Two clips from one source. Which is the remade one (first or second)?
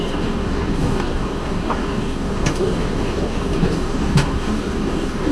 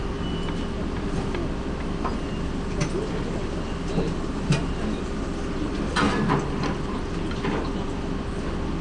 first